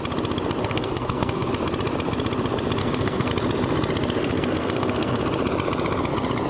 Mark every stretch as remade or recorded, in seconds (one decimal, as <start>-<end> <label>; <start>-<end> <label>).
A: 0.0-0.6 recorded; 0.6-1.5 remade; 1.5-2.8 recorded; 2.8-3.3 remade; 3.3-4.2 recorded; 4.2-5.2 remade; 5.2-6.5 recorded